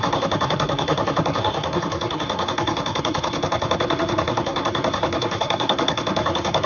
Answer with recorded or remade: remade